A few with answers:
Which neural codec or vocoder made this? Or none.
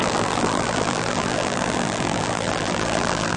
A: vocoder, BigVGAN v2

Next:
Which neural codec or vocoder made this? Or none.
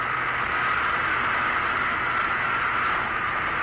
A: none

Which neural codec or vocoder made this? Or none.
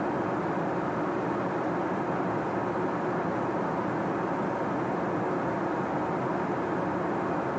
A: none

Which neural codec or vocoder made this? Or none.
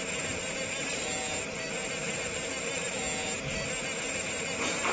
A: none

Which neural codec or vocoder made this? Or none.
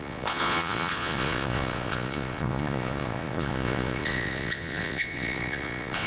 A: vocoder, Vocos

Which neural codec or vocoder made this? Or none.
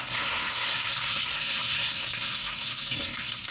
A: codec, SNAC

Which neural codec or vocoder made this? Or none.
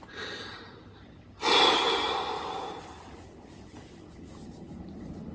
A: none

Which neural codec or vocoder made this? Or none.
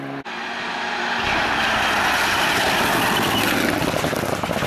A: none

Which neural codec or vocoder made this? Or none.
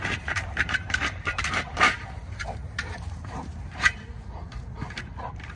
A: vocoder, BigVGAN v2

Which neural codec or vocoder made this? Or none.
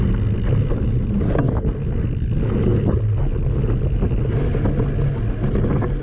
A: none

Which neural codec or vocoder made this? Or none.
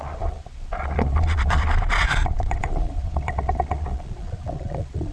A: vocoder, Vocos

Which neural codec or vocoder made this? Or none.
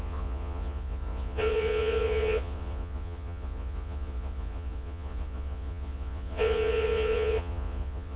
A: vocoder, Vocos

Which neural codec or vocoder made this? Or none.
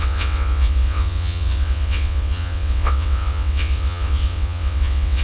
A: vocoder, WaveNeXt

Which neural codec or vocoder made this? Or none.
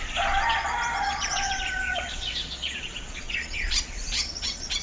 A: vocoder, Vocos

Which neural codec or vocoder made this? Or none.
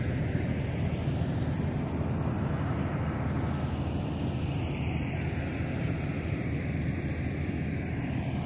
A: none